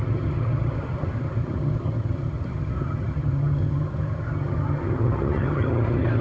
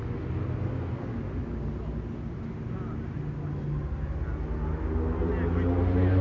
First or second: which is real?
second